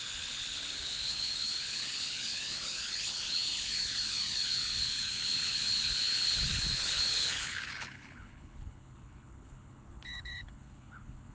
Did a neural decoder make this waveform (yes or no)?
yes